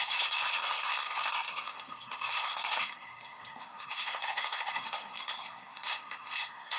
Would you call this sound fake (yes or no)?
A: yes